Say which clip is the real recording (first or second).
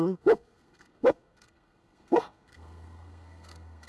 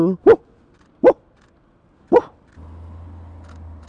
second